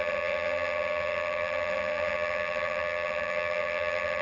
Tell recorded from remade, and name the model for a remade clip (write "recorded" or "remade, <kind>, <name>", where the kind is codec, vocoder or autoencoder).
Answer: remade, vocoder, HiFi-GAN